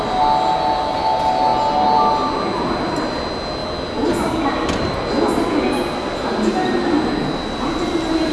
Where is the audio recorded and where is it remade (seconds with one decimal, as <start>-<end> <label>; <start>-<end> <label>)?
0.0-8.3 recorded